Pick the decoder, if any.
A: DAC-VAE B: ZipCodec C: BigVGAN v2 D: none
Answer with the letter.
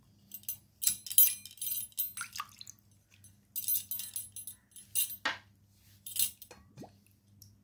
D